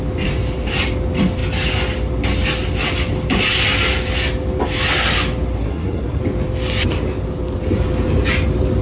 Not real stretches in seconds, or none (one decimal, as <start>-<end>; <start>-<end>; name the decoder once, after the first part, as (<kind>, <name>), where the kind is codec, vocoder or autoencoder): 5.6-6.2 (codec, SNAC)